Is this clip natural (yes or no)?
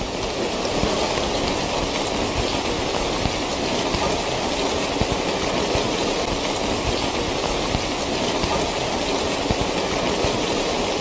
yes